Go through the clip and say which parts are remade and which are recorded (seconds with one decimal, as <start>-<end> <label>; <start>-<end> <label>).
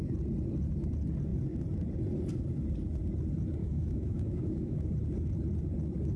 0.0-3.6 recorded; 3.6-4.9 remade; 4.9-6.2 recorded